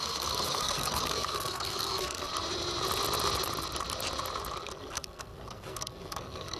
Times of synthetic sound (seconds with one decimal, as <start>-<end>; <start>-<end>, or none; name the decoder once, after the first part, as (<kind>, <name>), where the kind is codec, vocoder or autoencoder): 0.0-2.3 (codec, SNAC); 4.8-6.6